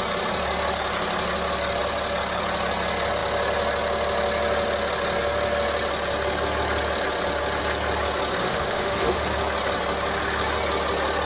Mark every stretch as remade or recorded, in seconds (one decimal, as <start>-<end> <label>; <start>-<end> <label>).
0.0-8.4 recorded; 8.4-9.2 remade; 9.2-11.2 recorded